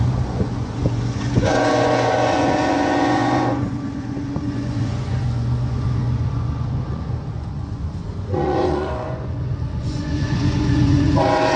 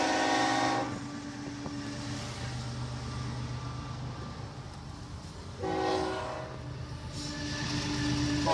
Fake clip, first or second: first